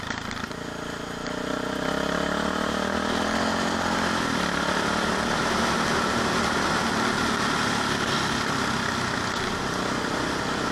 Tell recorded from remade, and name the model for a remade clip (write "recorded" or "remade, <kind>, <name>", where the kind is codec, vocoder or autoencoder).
recorded